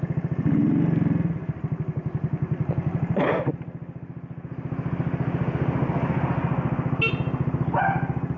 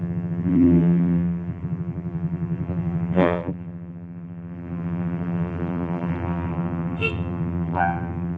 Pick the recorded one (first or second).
first